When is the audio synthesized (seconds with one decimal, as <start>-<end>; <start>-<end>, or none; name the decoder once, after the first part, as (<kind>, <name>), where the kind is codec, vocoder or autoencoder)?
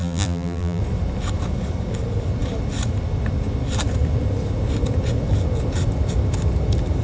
0.0-0.8 (vocoder, BigVGAN v2)